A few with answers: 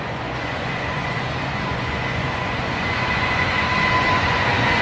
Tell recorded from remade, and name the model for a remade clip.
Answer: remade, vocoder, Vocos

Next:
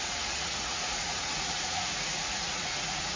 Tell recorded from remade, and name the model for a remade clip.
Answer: remade, vocoder, Vocos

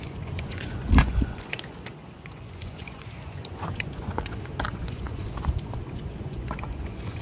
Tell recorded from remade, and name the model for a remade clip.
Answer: remade, vocoder, Vocos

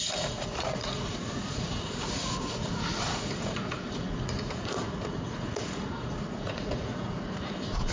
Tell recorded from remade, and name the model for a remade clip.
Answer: remade, vocoder, Vocos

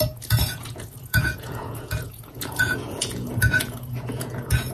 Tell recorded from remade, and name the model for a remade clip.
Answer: remade, vocoder, Vocos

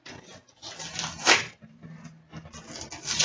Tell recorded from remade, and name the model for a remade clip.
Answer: recorded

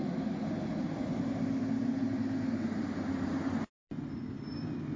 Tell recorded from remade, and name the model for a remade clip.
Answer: recorded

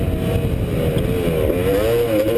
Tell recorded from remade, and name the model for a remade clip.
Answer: recorded